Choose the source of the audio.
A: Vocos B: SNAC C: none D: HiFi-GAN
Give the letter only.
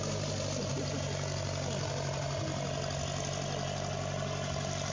C